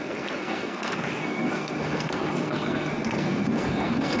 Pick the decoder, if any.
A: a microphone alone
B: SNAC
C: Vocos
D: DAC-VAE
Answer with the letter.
B